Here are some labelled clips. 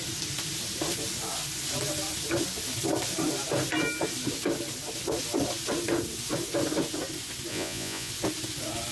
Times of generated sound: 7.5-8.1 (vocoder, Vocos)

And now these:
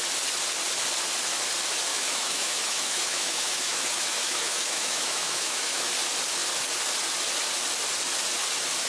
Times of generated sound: 1.9-5.9 (autoencoder, DAC-VAE)

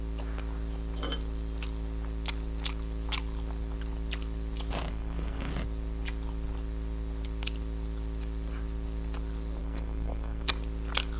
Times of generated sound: 4.9-5.5 (codec, SNAC); 9.6-10.5

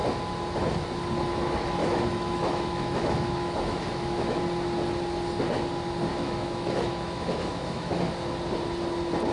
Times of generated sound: 1.8-4.4 (autoencoder, DAC-VAE); 6.1-8.0

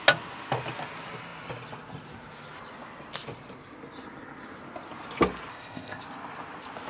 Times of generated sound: 5.5-6.0 (codec, ZipCodec)